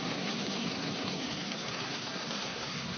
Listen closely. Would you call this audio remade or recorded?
remade